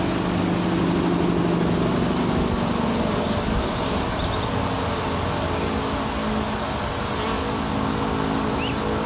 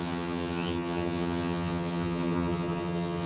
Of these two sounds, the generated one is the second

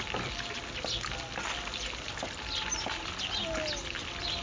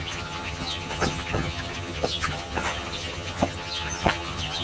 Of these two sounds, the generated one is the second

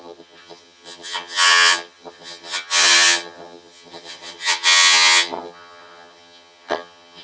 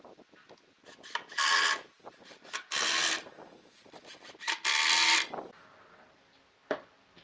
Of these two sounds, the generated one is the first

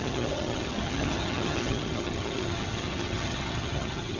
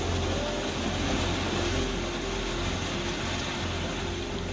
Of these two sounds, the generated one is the first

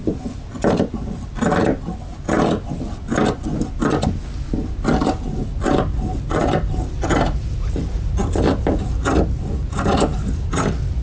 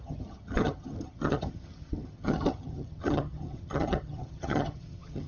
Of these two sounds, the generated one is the second